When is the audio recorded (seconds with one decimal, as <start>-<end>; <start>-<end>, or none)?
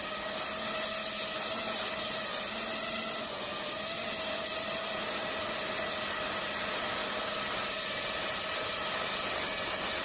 0.0-10.0